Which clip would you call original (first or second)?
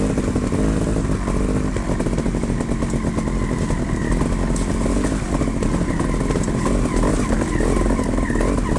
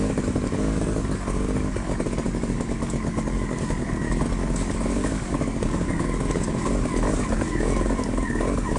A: first